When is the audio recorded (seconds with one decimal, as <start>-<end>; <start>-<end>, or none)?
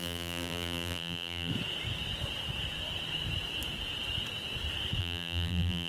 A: 1.5-5.0